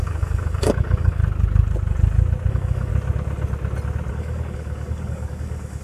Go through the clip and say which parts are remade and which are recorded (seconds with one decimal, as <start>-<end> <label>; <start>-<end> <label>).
0.0-1.2 remade; 1.2-2.5 recorded; 2.5-2.9 remade; 2.9-4.1 recorded; 4.1-5.8 remade